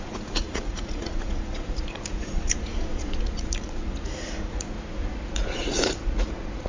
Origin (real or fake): fake